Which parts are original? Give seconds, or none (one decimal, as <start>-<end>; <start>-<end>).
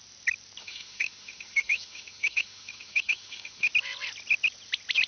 0.0-0.6; 3.7-5.1